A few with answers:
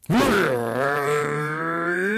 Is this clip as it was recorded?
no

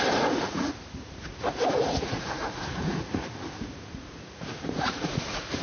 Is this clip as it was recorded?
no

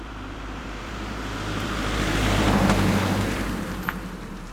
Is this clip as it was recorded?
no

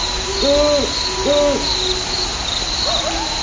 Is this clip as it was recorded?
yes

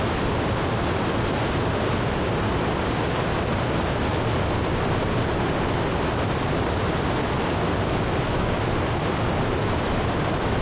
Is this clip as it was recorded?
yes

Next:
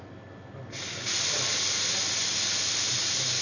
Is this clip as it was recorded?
yes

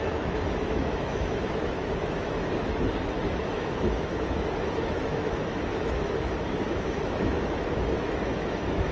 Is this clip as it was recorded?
no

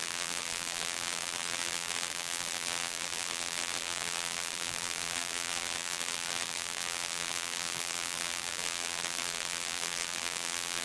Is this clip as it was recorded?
no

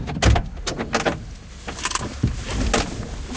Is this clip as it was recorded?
yes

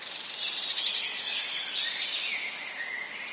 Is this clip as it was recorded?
yes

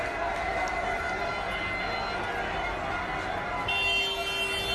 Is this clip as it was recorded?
yes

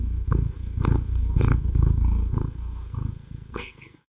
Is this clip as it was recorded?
no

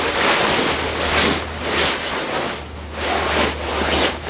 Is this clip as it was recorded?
yes